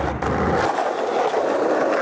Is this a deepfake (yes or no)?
no